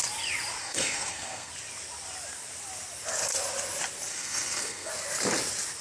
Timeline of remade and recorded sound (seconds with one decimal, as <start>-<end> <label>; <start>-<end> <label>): 0.0-0.6 recorded; 0.6-1.5 remade; 1.5-4.1 recorded; 4.1-4.9 remade; 4.9-5.8 recorded